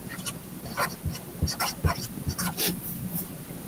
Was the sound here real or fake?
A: fake